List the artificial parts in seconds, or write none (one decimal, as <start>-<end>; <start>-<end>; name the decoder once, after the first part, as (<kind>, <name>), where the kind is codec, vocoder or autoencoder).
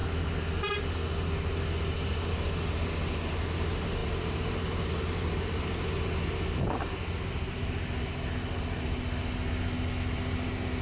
none